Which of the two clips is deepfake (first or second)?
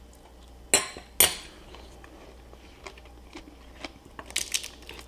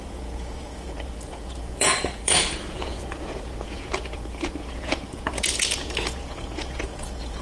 second